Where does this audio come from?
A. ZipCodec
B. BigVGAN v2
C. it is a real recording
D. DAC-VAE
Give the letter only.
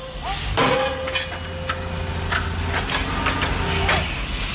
C